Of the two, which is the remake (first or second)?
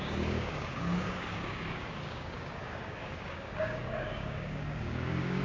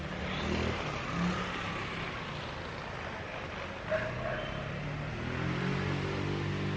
first